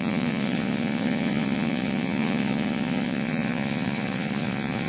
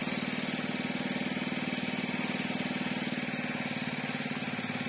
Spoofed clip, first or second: first